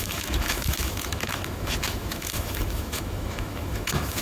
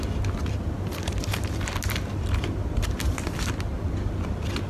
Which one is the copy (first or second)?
first